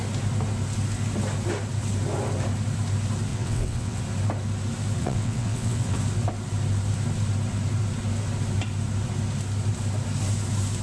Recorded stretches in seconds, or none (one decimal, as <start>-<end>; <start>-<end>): 0.0-3.3; 4.0-5.0; 6.0-10.8